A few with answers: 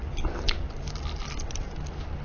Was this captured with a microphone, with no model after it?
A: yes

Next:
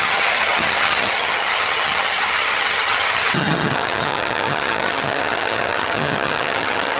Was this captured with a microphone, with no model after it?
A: no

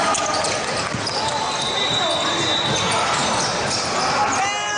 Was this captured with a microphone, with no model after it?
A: yes